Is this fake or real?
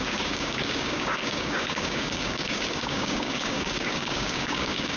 fake